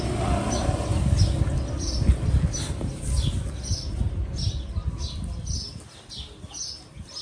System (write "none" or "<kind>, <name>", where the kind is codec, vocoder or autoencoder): none